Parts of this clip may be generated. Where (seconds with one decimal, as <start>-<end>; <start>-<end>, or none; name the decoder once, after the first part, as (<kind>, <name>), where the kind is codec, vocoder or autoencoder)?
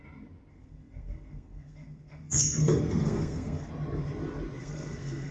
0.5-3.7 (codec, SNAC); 4.6-5.3